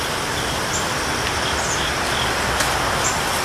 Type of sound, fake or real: real